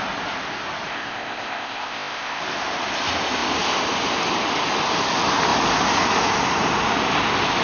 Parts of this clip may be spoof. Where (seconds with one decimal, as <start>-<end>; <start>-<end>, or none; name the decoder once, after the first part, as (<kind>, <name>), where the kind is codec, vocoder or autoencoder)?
0.9-2.4 (codec, ZipCodec)